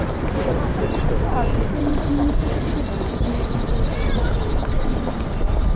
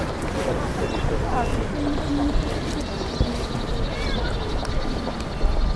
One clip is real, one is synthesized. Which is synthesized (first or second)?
first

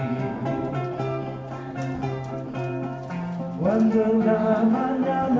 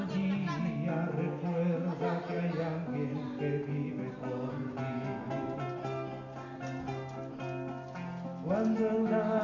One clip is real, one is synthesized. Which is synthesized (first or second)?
first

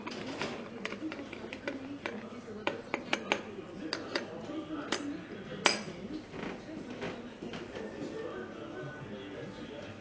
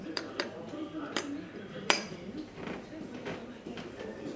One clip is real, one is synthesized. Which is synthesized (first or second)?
second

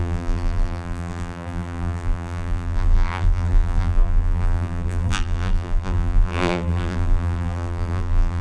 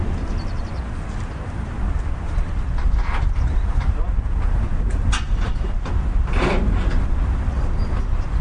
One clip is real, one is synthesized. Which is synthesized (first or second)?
first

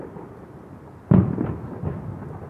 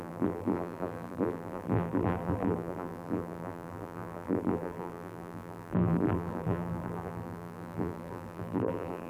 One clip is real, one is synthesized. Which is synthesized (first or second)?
second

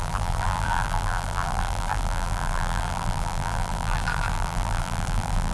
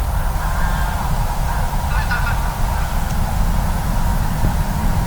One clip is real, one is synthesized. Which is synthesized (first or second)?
first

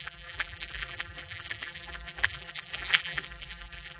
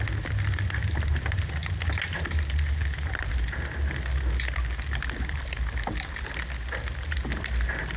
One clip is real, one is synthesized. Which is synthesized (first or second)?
first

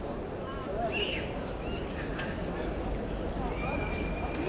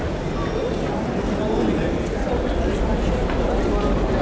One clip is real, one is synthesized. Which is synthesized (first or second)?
first